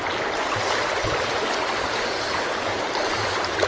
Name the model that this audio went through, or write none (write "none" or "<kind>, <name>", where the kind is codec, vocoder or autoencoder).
none